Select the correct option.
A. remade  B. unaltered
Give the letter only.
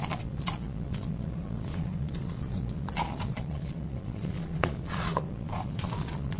A